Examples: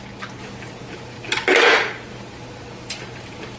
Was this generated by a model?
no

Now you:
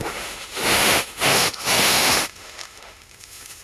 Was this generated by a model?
yes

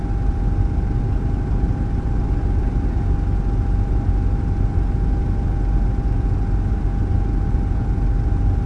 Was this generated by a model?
no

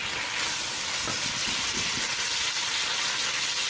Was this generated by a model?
no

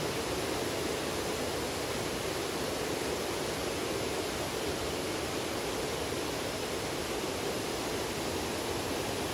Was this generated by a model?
no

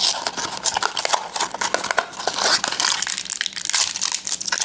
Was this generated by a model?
no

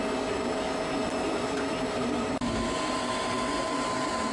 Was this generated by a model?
no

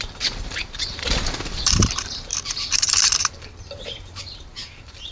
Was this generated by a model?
yes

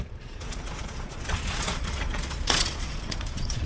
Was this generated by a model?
yes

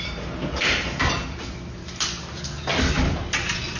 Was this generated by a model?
no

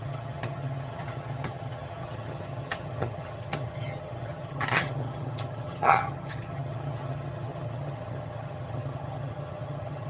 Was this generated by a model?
yes